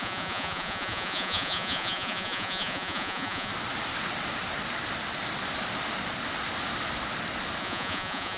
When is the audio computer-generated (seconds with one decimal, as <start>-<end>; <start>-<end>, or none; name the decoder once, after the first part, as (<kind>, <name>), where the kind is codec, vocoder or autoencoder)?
0.0-3.5 (vocoder, Vocos); 7.6-8.4